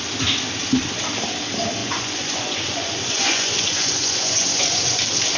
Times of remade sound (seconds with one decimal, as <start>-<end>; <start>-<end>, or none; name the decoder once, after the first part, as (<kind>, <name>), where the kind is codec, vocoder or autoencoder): 1.8-5.0 (vocoder, Vocos)